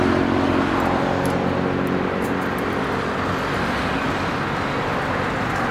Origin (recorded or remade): recorded